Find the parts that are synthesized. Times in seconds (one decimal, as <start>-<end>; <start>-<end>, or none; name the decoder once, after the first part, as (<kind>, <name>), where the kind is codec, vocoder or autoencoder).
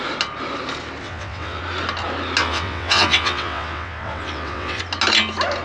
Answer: 1.0-1.6 (vocoder, WaveNeXt); 2.4-4.8